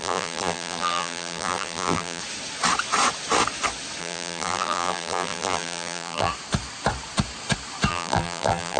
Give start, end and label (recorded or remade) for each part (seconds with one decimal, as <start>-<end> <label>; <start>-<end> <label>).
0.0-2.2 remade; 2.2-4.0 recorded; 4.0-6.3 remade; 6.3-7.9 recorded; 7.9-8.8 remade